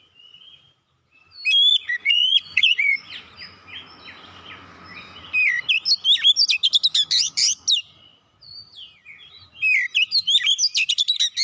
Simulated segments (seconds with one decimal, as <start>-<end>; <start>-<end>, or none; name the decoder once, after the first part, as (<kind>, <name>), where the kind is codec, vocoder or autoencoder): 1.7-3.2 (vocoder, Vocos)